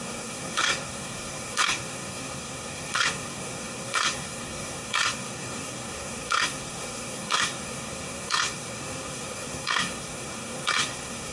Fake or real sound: fake